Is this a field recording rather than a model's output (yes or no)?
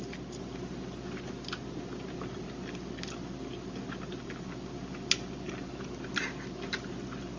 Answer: yes